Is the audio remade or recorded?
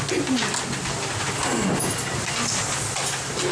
recorded